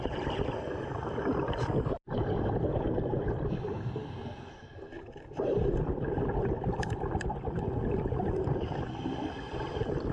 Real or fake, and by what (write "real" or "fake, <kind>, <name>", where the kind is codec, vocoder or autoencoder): real